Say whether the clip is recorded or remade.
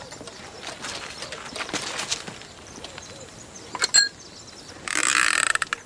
recorded